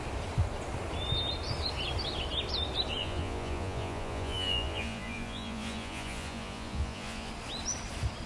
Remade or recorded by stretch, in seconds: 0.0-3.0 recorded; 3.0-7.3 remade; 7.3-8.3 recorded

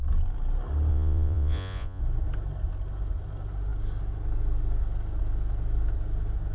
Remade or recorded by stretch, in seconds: 0.0-0.9 recorded; 0.9-2.0 remade; 2.0-6.5 recorded

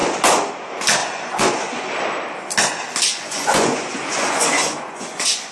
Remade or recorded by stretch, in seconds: 0.0-1.0 recorded; 1.0-1.9 remade; 1.9-3.1 recorded; 3.1-5.5 remade

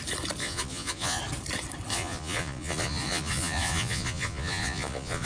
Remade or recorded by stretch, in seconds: 0.0-0.4 recorded; 0.4-1.2 remade; 1.2-1.9 recorded; 1.9-5.3 remade

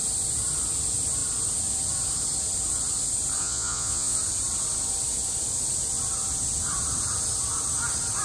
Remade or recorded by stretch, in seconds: 0.0-3.4 recorded; 3.4-4.2 remade; 4.2-8.2 recorded

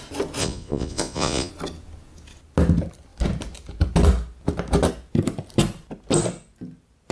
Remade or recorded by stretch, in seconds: 0.0-0.4 recorded; 0.4-1.5 remade; 1.5-7.1 recorded

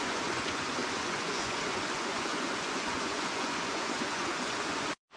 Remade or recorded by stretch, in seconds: 0.0-5.2 remade